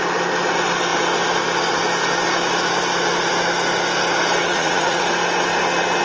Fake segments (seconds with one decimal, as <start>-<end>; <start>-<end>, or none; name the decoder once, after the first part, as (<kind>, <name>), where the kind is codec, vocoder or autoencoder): 4.4-5.0 (vocoder, Vocos)